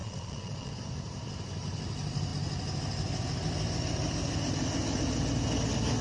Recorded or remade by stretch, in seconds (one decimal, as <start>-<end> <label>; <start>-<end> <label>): 0.0-0.7 remade; 0.7-6.0 recorded